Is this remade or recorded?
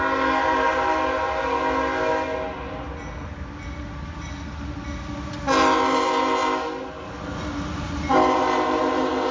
recorded